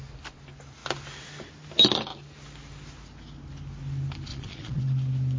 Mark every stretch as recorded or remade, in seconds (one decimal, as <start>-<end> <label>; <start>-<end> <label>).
0.0-4.3 recorded; 4.3-4.8 remade; 4.8-5.4 recorded